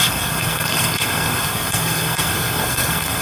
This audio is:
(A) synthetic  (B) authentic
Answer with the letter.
A